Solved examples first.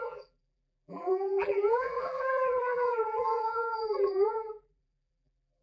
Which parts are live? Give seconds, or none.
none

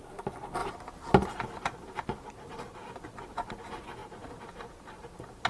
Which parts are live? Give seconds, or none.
0.0-0.6; 3.5-4.0; 4.8-5.5

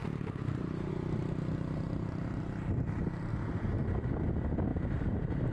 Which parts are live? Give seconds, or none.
0.9-3.3; 3.8-5.5

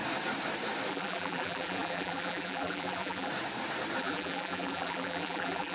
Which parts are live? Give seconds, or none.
0.0-0.9; 3.3-4.0

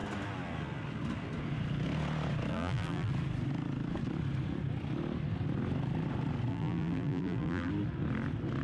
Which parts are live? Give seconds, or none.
0.0-2.5; 3.1-6.5; 7.7-8.6

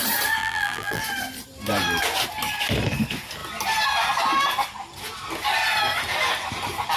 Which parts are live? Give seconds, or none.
0.0-0.4; 1.0-7.0